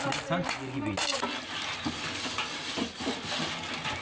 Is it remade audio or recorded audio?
recorded